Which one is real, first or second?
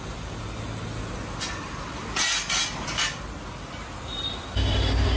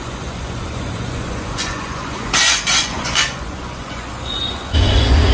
first